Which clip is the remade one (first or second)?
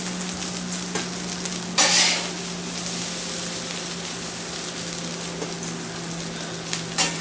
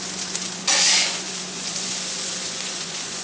second